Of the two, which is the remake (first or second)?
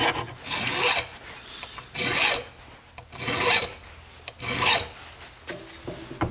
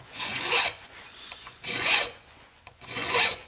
second